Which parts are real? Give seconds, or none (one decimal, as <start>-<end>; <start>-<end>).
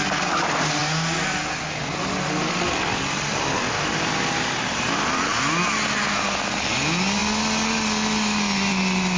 0.0-9.2